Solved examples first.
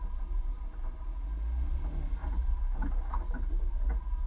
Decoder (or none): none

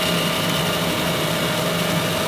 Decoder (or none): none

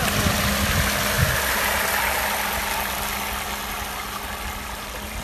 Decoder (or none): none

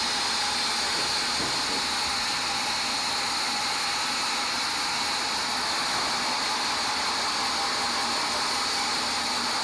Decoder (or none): none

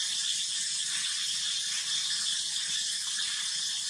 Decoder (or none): none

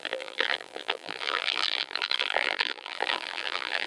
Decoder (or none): vocoder, BigVGAN v2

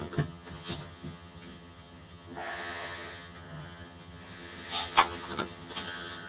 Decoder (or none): vocoder, HiFi-GAN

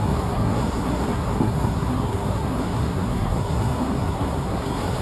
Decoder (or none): codec, SNAC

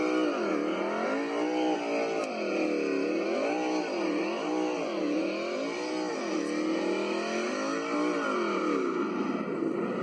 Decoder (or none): none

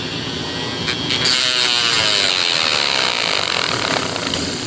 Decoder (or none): none